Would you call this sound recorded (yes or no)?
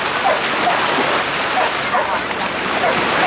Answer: yes